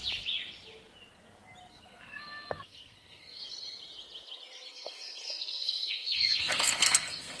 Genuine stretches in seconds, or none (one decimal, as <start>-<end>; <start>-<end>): 0.0-1.7; 3.4-4.7